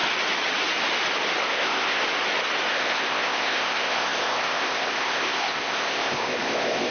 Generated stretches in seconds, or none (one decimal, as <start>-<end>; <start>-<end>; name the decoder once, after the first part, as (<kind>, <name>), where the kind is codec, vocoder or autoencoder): 1.4-2.0 (codec, ZipCodec); 2.7-6.9